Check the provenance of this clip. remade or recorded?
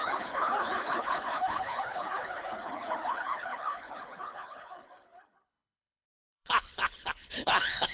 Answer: remade